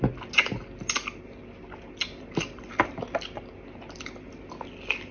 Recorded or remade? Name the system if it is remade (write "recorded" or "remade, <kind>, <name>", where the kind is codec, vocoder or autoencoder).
recorded